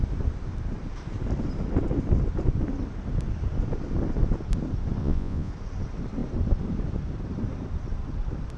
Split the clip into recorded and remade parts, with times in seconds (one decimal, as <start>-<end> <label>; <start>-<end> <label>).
0.0-5.0 recorded; 5.0-5.5 remade; 5.5-8.6 recorded